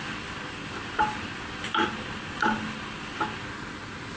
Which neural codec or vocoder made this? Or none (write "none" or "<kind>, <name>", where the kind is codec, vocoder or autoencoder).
none